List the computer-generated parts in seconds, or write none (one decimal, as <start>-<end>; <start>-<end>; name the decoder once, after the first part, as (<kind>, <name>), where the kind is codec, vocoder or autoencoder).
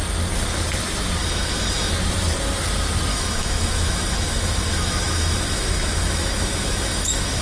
1.2-1.9 (autoencoder, DAC-VAE); 3.1-7.4